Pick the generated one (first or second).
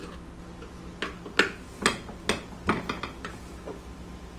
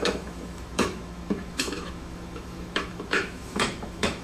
second